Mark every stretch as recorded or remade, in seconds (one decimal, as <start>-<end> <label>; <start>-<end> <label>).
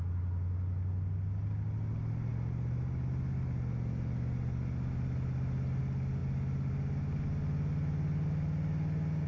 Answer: 0.0-9.3 recorded